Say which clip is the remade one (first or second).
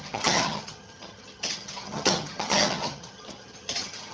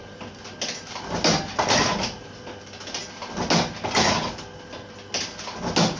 first